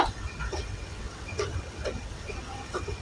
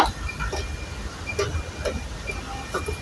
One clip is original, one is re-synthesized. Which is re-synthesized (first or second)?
first